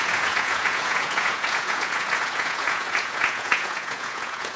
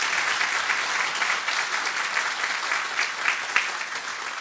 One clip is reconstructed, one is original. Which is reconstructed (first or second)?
first